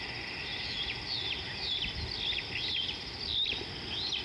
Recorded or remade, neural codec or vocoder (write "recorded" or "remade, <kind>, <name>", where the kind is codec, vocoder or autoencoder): recorded